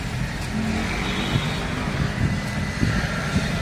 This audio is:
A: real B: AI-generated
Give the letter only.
A